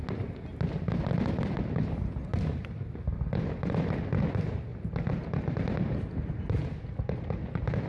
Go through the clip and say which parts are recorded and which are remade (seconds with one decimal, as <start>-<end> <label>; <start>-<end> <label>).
0.0-7.9 recorded